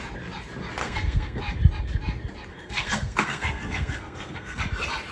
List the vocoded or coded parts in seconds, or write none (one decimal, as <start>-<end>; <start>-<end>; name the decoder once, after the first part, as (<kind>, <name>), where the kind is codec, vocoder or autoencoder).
0.8-1.4 (codec, SNAC); 2.5-4.6